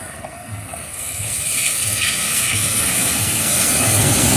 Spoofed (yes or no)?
yes